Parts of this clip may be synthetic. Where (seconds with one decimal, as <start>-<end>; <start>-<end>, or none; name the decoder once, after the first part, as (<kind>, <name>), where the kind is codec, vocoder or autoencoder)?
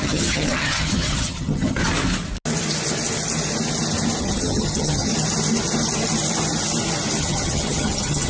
0.0-1.8 (vocoder, HiFi-GAN); 4.2-5.1; 7.2-8.3